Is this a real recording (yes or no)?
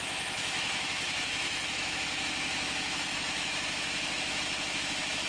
no